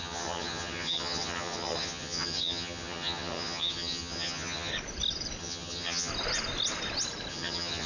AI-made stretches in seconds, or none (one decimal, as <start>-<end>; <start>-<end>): 0.0-4.7; 5.4-6.1; 7.3-7.9